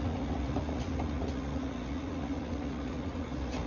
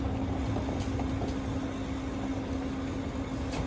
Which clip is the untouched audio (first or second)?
second